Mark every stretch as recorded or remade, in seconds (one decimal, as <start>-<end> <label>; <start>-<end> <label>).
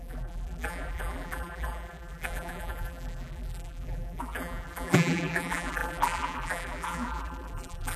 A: 0.0-8.0 remade